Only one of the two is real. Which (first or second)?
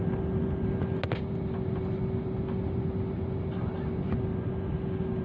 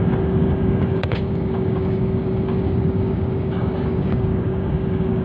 first